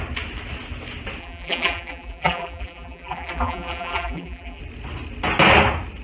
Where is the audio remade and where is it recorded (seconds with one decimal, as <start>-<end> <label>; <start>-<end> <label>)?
0.0-1.2 recorded; 1.2-4.6 remade; 4.6-6.0 recorded